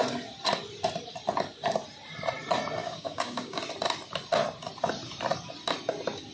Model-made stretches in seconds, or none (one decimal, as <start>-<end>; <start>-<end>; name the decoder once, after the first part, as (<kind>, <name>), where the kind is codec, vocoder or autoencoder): 2.8-3.6 (codec, DAC)